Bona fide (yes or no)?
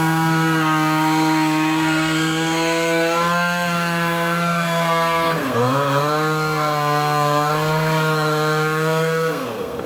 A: no